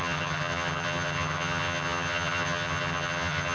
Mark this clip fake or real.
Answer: fake